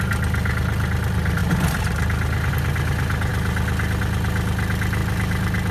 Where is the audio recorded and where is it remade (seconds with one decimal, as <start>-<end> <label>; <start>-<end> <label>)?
0.0-5.7 recorded